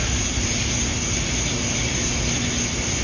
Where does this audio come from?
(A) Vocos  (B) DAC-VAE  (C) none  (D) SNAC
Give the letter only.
C